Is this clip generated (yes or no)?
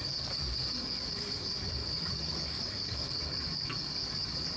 yes